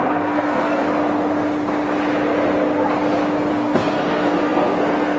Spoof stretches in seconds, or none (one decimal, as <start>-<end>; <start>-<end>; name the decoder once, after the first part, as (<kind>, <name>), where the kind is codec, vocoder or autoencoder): 0.0-0.8 (codec, SNAC); 3.5-5.2